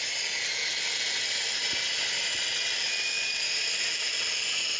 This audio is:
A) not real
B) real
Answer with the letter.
B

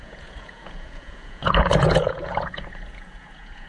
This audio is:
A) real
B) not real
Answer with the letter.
B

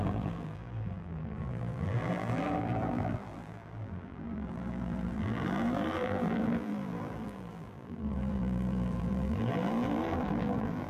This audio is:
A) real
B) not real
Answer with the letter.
B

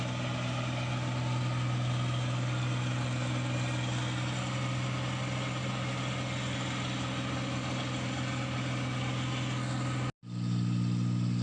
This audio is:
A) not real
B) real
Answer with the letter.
B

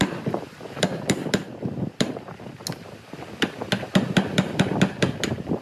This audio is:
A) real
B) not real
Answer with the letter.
A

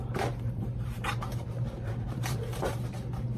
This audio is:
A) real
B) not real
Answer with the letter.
B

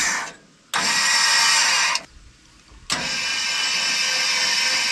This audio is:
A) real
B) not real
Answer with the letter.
A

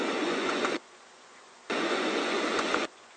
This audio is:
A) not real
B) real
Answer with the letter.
A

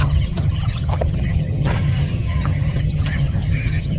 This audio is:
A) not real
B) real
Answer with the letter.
A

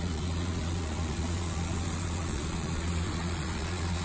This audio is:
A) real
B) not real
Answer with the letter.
B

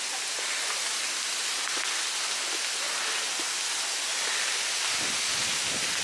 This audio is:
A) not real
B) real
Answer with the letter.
B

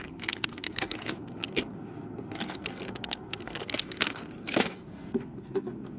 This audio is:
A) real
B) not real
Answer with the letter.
B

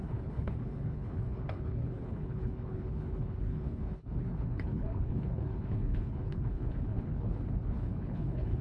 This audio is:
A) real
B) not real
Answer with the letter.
B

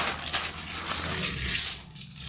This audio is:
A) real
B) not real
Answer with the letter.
A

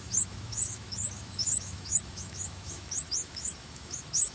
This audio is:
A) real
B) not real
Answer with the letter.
B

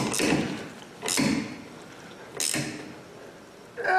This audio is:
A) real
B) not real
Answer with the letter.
A